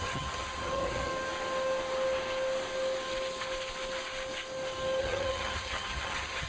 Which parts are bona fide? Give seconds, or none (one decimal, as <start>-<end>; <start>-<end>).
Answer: 1.1-5.0